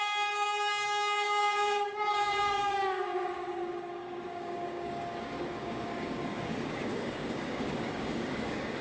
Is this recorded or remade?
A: remade